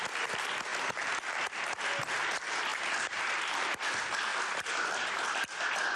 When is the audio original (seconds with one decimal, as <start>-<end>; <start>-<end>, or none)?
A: 0.0-0.7; 1.6-2.7; 3.9-4.3; 5.6-6.0